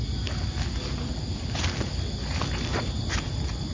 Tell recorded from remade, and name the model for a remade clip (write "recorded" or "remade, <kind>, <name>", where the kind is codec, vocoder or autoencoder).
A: recorded